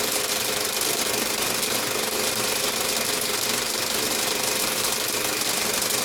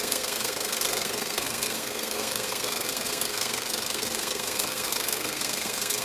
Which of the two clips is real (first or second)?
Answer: first